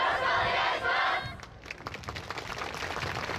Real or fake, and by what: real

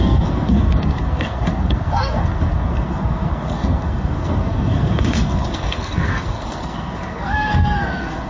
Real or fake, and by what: fake, codec, SNAC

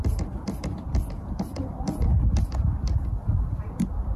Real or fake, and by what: real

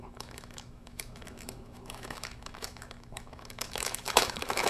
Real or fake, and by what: fake, autoencoder, DAC-VAE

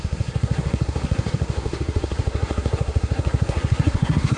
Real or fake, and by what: fake, codec, SNAC